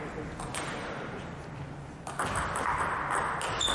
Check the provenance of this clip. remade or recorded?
recorded